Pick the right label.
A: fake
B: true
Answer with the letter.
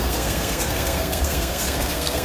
A